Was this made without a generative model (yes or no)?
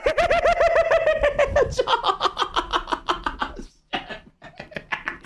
yes